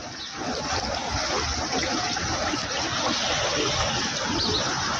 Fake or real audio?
real